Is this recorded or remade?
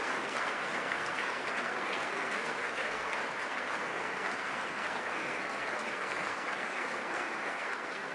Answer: remade